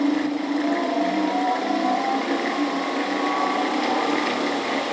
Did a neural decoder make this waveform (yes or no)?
yes